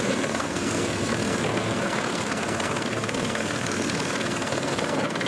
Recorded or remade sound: remade